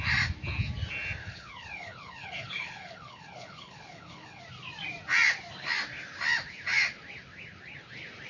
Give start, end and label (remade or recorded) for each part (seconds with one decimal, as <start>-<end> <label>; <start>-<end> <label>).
0.0-1.2 recorded; 1.2-4.4 remade; 4.4-8.3 recorded